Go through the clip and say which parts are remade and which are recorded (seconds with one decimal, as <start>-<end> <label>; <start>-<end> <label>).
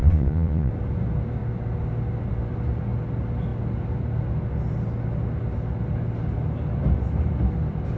0.0-0.7 remade; 0.7-8.0 recorded